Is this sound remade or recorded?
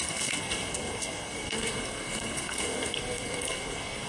remade